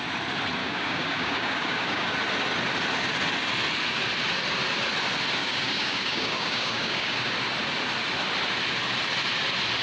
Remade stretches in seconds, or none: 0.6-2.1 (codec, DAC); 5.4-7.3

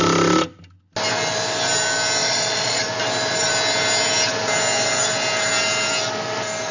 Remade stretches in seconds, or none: 2.2-2.8 (vocoder, Vocos)

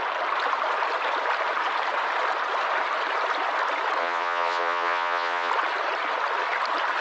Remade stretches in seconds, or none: 4.0-5.5 (vocoder, Vocos)

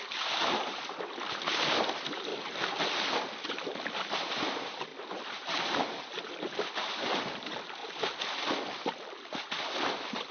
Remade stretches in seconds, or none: 2.3-2.9 (vocoder, BigVGAN v2); 4.9-6.2

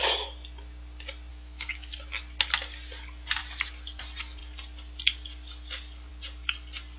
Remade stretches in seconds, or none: 1.3-1.9 (autoencoder, DAC-VAE)